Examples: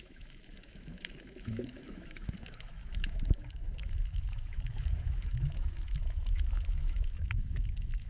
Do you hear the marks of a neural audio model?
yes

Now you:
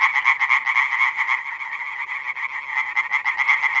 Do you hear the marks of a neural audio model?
no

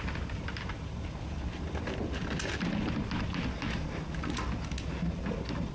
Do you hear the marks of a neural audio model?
no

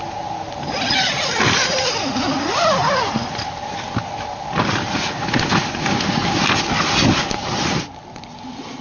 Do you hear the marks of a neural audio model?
no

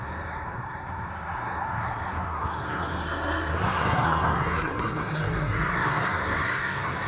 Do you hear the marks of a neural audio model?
yes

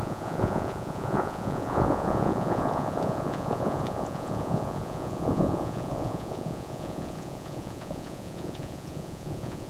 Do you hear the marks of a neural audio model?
yes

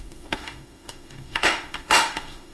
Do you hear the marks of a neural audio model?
yes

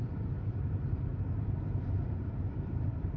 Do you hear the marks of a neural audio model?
yes